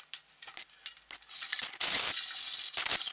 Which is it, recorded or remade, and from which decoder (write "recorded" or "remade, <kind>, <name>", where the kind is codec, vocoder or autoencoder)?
recorded